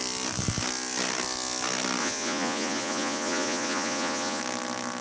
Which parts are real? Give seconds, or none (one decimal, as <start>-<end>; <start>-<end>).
0.0-2.0; 4.4-5.0